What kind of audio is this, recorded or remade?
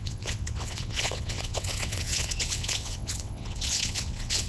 remade